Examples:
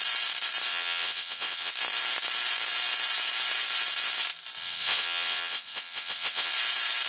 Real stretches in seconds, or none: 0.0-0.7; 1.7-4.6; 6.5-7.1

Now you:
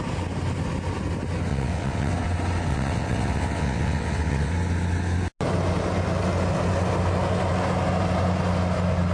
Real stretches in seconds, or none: 0.0-1.5; 2.1-2.7; 4.5-9.1

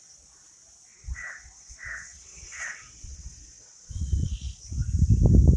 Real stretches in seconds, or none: 0.0-0.9; 4.3-5.6

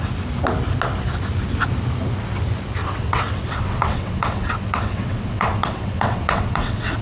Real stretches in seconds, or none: 0.0-2.8

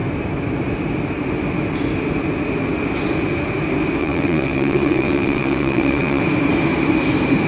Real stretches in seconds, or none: 0.0-4.0; 6.2-7.5

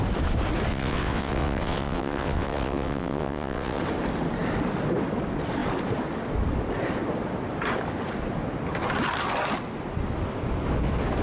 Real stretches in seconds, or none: 0.0-0.7; 3.8-11.2

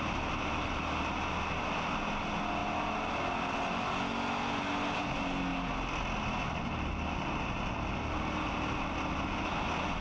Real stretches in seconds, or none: 0.0-10.0

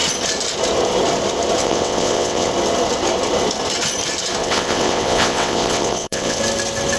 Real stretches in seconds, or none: 0.0-1.6; 2.5-4.4; 6.4-7.0